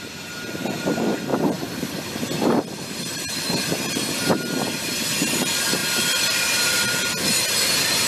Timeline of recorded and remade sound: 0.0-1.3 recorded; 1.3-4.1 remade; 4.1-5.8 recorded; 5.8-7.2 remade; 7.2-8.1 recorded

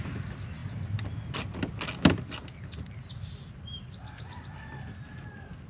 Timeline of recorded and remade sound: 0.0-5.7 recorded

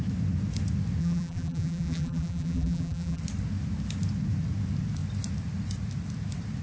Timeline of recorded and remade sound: 0.0-1.0 recorded; 1.0-3.2 remade; 3.2-6.6 recorded

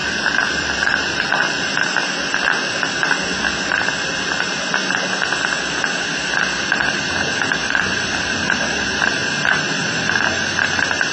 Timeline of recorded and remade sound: 0.0-1.7 remade; 1.7-7.6 recorded; 7.6-9.1 remade; 9.1-9.8 recorded; 9.8-10.3 remade; 10.3-11.1 recorded

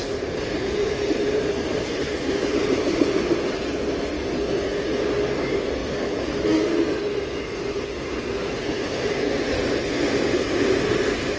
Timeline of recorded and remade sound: 0.0-3.2 remade; 3.2-5.8 recorded; 5.8-6.4 remade; 6.4-11.4 recorded

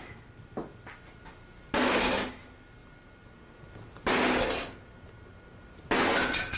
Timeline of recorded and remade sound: 0.0-6.6 recorded

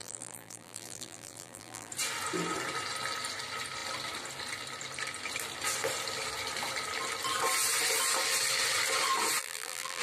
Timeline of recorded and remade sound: 0.0-1.9 remade; 1.9-9.4 recorded; 9.4-10.0 remade

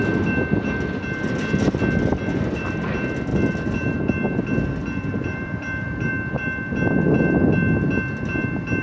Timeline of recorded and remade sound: 0.0-2.1 recorded; 2.1-2.9 remade; 2.9-3.3 recorded; 3.3-4.0 remade; 4.0-4.8 recorded; 4.8-6.1 remade; 6.1-8.8 recorded